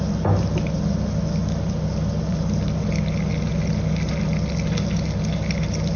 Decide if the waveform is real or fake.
real